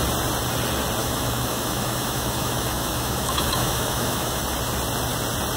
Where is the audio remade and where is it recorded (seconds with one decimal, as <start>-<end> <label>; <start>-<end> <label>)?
0.0-1.0 recorded; 1.0-4.4 remade; 4.4-5.6 recorded